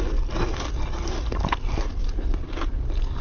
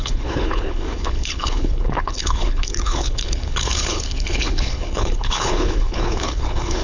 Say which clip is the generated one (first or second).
second